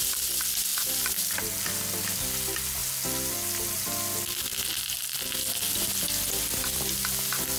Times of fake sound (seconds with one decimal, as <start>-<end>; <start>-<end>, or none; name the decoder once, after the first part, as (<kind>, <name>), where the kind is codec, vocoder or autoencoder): none